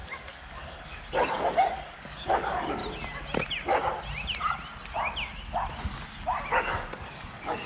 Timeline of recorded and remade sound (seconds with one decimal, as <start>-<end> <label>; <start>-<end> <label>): 0.0-2.8 remade; 2.8-6.5 recorded; 6.5-7.7 remade